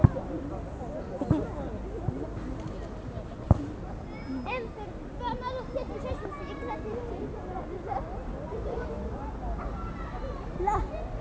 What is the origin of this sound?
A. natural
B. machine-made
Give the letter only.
A